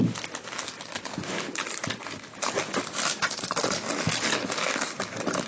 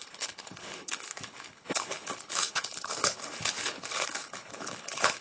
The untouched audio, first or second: first